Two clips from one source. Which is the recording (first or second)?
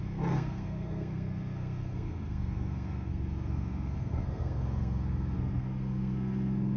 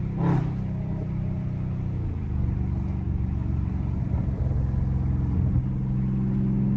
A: second